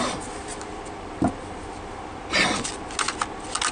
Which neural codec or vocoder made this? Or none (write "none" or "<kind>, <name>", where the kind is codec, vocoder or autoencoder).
none